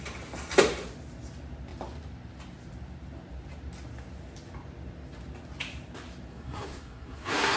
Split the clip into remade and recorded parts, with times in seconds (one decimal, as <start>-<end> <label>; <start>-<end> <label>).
0.0-6.3 recorded; 6.3-7.6 remade